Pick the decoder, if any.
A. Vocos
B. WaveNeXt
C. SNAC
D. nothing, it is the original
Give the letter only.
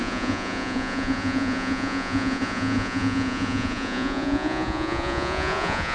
A